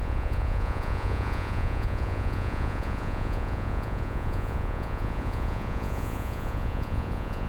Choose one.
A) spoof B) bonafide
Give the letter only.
A